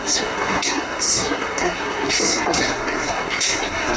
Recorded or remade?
remade